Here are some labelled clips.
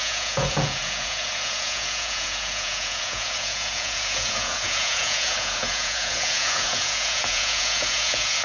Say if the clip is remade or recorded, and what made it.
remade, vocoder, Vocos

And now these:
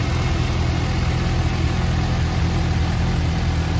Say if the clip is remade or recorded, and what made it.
recorded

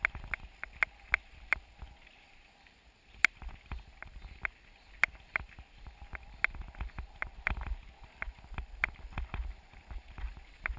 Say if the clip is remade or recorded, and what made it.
recorded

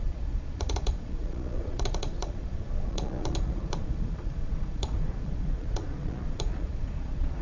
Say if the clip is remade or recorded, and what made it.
remade, vocoder, Vocos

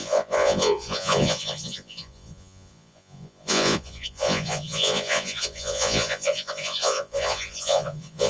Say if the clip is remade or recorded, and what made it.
remade, vocoder, Vocos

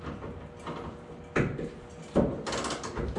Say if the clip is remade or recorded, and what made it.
recorded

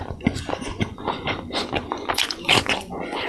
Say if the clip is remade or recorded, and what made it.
remade, vocoder, Vocos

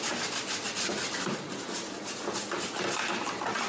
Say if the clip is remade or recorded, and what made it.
recorded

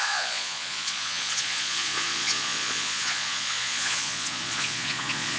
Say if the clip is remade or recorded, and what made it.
remade, vocoder, Vocos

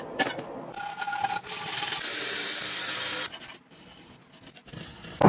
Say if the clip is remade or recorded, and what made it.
recorded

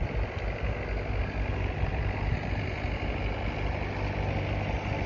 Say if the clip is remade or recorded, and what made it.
recorded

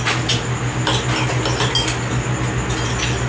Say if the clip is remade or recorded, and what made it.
recorded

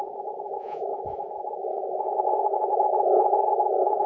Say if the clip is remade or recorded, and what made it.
remade, vocoder, Vocos